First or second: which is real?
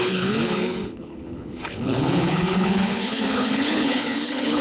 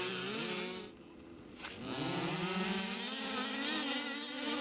second